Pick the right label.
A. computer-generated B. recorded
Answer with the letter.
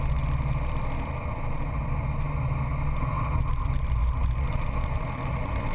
B